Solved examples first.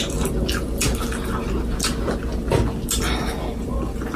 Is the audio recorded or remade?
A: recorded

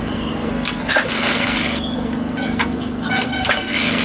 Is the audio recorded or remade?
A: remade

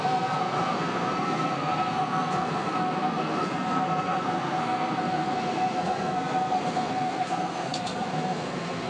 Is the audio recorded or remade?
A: remade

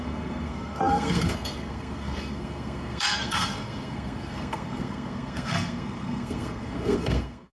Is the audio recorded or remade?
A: remade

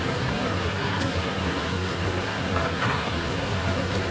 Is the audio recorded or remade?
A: remade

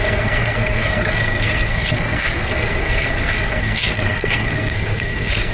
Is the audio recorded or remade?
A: remade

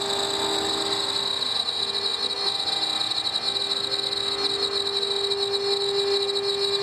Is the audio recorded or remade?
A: recorded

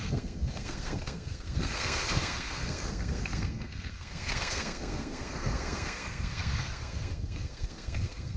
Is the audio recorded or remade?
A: remade